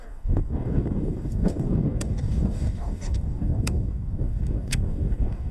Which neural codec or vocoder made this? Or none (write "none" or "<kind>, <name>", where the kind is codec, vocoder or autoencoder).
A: codec, DAC